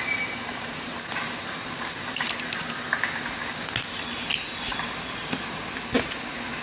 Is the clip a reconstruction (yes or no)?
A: no